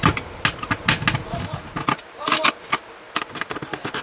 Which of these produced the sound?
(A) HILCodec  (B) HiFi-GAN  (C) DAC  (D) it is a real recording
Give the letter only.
D